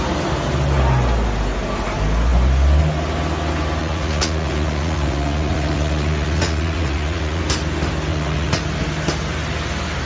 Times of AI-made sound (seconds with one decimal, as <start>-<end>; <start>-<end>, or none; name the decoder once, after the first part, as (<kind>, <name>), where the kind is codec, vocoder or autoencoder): 3.8-7.4 (vocoder, Vocos); 8.1-8.6